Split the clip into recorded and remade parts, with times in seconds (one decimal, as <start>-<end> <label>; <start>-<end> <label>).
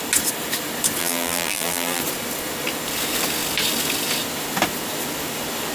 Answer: 0.0-1.0 recorded; 1.0-2.0 remade; 2.0-5.7 recorded